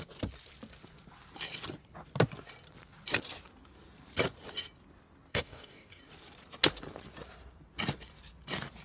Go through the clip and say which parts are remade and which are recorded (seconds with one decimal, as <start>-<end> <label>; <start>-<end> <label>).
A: 0.0-5.3 recorded; 5.3-6.0 remade; 6.0-8.8 recorded